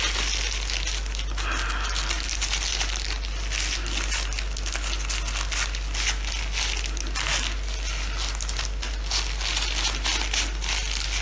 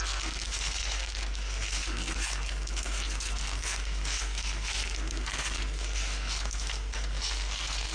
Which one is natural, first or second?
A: first